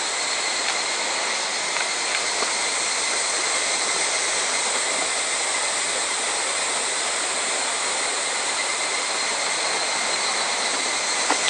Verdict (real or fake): fake